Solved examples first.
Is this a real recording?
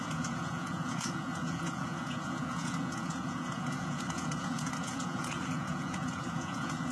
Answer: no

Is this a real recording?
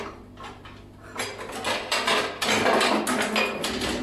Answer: yes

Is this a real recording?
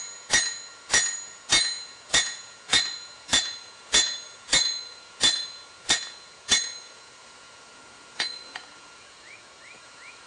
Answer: no